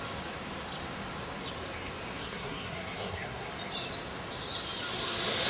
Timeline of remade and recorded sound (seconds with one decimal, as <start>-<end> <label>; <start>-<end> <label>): 0.0-2.1 recorded; 2.1-3.5 remade; 3.5-5.5 recorded

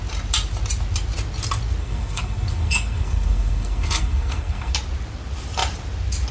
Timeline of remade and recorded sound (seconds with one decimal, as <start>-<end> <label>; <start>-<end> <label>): 0.0-1.8 recorded; 1.8-4.7 remade; 4.7-6.3 recorded

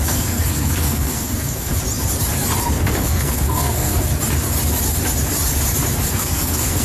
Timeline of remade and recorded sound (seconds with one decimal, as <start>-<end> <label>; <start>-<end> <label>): 0.0-1.7 remade; 1.7-2.6 recorded; 2.6-3.9 remade; 3.9-6.1 recorded; 6.1-6.8 remade

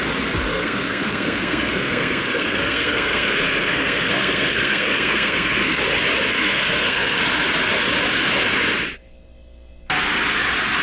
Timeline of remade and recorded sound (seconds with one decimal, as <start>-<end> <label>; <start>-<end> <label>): 0.0-0.5 recorded; 0.5-5.8 remade; 5.8-6.3 recorded; 6.3-7.2 remade; 7.2-10.8 recorded

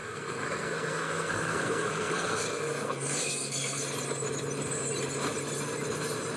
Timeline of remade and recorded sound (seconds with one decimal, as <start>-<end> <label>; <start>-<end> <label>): 0.0-3.8 remade; 3.8-6.4 recorded

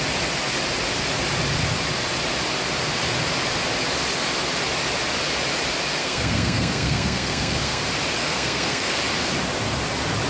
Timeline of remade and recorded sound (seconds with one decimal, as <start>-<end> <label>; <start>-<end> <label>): 0.0-6.0 recorded; 6.0-7.8 remade; 7.8-8.2 recorded; 8.2-9.0 remade; 9.0-10.3 recorded

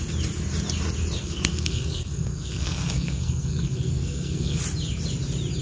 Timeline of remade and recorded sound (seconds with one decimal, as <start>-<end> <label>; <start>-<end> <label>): 0.0-1.2 recorded; 1.2-4.6 remade; 4.6-5.6 recorded

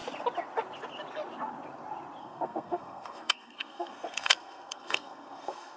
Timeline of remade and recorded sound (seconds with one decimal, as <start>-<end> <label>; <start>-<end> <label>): 0.0-2.2 recorded; 2.2-5.8 remade